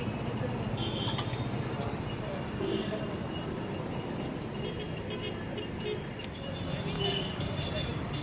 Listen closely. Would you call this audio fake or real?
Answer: real